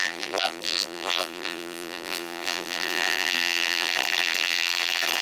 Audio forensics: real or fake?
fake